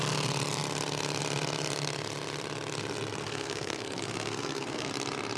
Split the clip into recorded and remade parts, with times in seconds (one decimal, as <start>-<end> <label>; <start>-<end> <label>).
0.0-3.2 recorded; 3.2-4.9 remade; 4.9-5.4 recorded